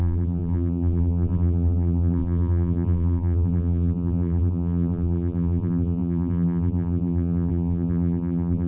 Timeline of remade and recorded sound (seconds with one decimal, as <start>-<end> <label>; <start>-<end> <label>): 0.0-8.7 remade